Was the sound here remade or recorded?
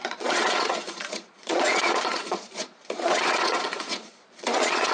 remade